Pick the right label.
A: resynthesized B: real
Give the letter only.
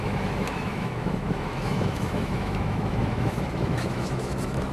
A